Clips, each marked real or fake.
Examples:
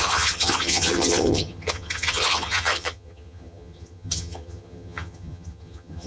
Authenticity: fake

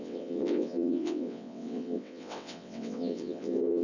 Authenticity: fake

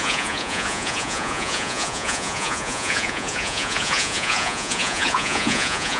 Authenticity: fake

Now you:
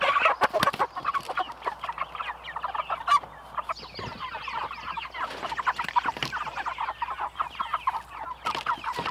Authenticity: real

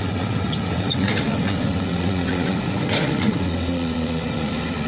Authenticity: fake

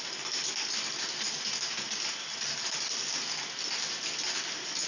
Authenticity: real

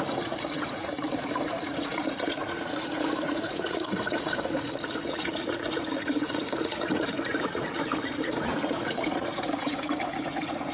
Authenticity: fake